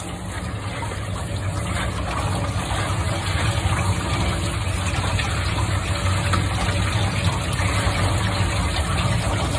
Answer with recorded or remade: recorded